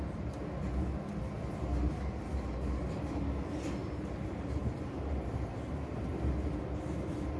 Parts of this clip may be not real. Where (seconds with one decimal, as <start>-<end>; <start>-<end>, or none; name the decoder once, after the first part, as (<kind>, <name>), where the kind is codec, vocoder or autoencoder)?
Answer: 3.8-5.0 (vocoder, BigVGAN v2)